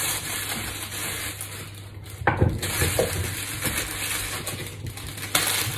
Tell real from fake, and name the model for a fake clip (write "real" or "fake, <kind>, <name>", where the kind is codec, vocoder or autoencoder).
real